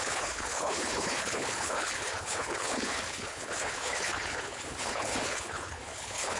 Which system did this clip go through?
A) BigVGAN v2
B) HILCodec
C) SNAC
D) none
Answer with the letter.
B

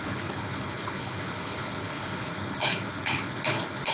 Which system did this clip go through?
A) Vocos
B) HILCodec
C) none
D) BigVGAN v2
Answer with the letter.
B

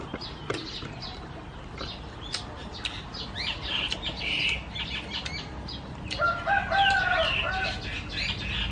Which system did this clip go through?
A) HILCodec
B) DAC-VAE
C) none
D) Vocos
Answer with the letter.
C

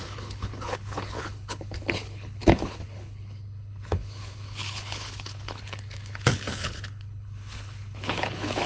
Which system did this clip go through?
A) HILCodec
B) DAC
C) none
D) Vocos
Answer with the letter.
A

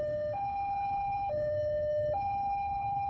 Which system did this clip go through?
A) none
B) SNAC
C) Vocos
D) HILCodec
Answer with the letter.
D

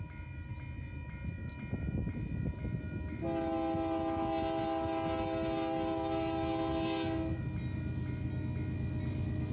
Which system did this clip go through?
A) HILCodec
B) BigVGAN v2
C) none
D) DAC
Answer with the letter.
C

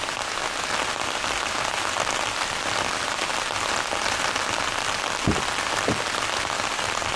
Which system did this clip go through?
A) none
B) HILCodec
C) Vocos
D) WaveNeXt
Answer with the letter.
A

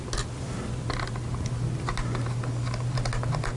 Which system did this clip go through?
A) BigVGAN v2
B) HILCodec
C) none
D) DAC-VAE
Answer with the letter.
C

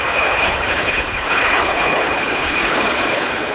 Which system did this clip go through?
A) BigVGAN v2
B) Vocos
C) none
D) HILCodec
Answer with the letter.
D